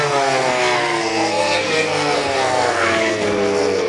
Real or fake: fake